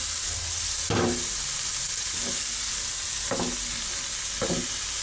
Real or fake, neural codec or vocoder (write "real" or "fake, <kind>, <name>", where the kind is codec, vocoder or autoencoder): real